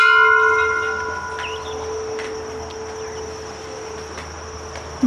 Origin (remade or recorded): recorded